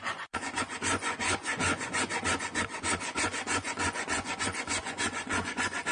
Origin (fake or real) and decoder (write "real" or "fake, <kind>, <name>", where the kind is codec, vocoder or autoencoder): fake, vocoder, Vocos